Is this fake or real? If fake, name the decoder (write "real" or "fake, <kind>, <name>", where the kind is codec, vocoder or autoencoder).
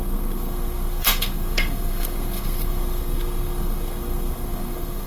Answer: fake, codec, SNAC